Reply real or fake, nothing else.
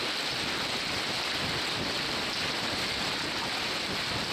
real